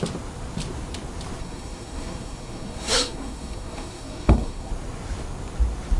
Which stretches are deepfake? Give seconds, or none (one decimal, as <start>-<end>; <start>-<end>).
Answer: 1.4-4.7